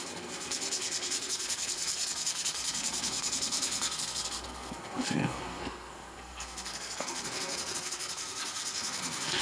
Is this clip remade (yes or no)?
yes